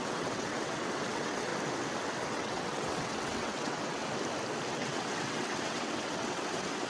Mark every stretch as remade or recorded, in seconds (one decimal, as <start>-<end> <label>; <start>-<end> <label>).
0.0-1.5 remade; 1.5-2.3 recorded; 2.3-4.0 remade; 4.0-4.7 recorded; 4.7-6.9 remade